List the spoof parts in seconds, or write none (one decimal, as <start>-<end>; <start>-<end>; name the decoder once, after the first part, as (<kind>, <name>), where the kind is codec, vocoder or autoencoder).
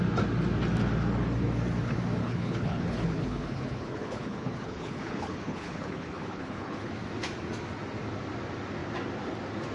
2.2-6.9 (codec, HILCodec)